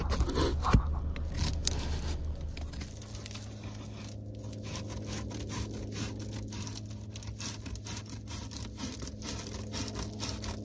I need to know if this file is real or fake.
real